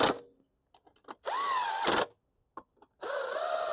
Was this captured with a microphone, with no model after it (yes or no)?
yes